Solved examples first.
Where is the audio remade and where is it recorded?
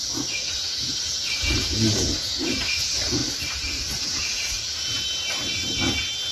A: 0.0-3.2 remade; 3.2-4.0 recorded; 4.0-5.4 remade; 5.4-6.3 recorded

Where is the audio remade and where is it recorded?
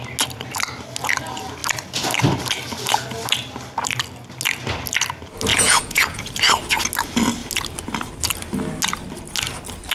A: 0.0-5.5 recorded; 5.5-6.3 remade; 6.3-9.9 recorded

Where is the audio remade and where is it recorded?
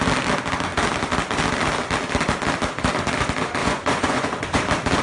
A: 0.0-3.6 recorded; 3.6-4.6 remade; 4.6-5.0 recorded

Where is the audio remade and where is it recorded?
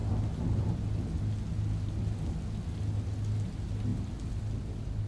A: 0.0-5.1 recorded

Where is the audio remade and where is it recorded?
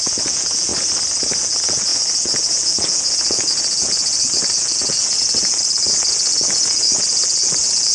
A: 0.0-0.7 remade; 0.7-1.4 recorded; 1.4-7.9 remade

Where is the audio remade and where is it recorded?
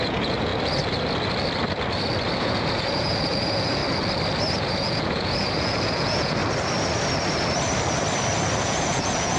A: 0.0-0.5 remade; 0.5-2.4 recorded; 2.4-3.8 remade; 3.8-4.7 recorded; 4.7-6.4 remade; 6.4-8.6 recorded; 8.6-9.4 remade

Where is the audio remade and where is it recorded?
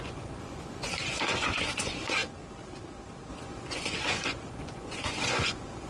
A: 0.0-2.2 remade; 2.2-3.3 recorded; 3.3-5.9 remade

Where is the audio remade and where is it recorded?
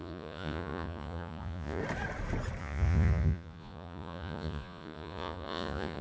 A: 0.0-1.8 remade; 1.8-2.6 recorded; 2.6-6.0 remade